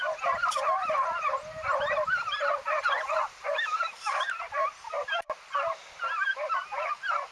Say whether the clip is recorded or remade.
recorded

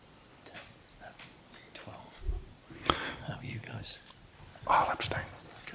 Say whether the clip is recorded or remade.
recorded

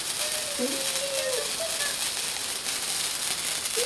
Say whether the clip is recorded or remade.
recorded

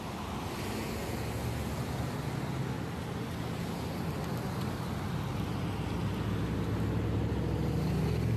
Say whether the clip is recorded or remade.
recorded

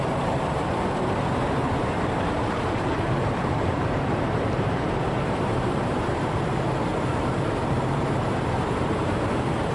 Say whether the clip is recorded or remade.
remade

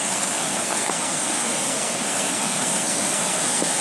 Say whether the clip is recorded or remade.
remade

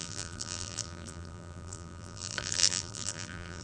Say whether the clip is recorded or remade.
remade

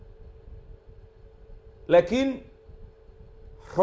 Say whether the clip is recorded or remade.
recorded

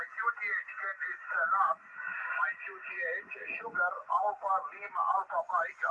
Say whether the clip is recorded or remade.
recorded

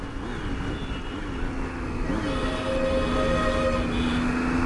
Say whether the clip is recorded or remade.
recorded